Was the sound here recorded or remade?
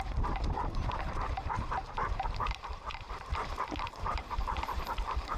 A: remade